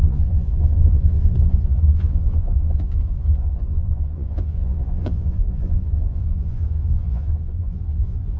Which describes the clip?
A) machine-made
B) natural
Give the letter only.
A